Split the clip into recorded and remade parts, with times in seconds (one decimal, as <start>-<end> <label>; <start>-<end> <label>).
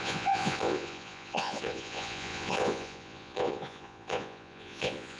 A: 0.0-5.2 remade